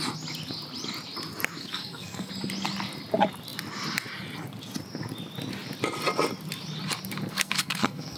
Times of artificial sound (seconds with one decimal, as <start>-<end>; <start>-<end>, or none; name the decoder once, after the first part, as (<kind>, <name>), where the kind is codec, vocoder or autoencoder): 1.6-2.3 (codec, SNAC); 7.3-8.2